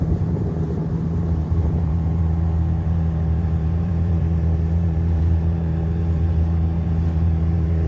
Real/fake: fake